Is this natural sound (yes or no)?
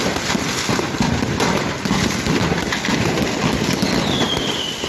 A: yes